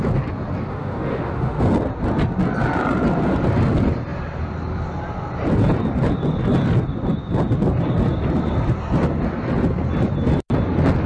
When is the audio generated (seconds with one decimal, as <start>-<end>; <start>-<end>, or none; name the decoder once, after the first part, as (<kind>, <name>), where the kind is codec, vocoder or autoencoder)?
0.7-1.6 (autoencoder, DAC-VAE)